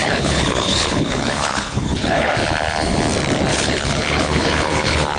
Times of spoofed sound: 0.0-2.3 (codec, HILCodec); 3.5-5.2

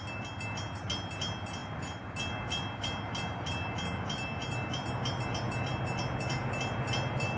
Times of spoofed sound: none

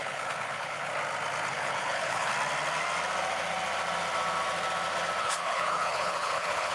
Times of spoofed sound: 0.0-0.9 (codec, HILCodec); 1.5-2.3; 5.2-6.7

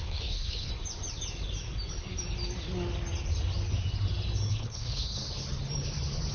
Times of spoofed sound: 0.0-0.7 (codec, HILCodec); 4.5-5.2

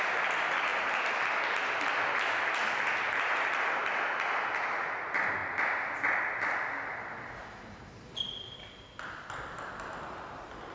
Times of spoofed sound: none